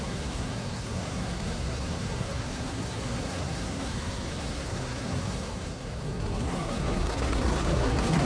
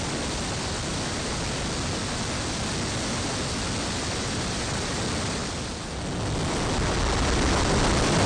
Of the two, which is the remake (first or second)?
first